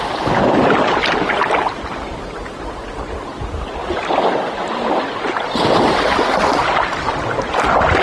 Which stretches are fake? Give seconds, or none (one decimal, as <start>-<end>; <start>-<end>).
none